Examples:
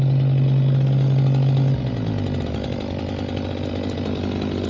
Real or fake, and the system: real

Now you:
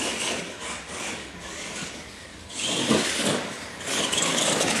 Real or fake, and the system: fake, codec, DAC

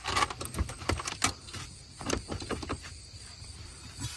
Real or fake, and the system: real